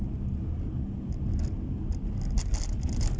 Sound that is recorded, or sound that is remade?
recorded